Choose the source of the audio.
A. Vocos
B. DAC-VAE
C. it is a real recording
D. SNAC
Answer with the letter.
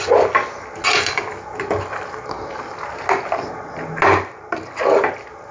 C